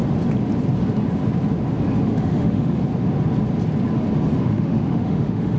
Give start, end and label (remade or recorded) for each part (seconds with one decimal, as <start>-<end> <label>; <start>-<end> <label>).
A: 0.0-2.0 recorded; 2.0-2.8 remade; 2.8-4.4 recorded; 4.4-5.6 remade